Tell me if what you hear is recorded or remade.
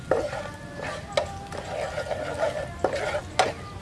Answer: recorded